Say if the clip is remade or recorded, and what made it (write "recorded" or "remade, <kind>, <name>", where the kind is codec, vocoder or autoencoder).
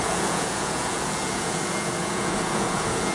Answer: remade, vocoder, Vocos